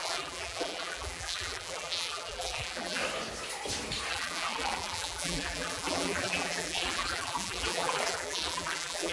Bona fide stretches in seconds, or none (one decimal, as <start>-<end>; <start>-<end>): 3.0-4.1